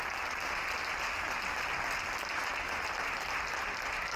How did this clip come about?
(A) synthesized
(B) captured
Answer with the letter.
B